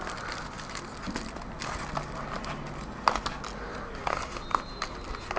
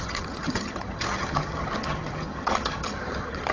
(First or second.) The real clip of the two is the first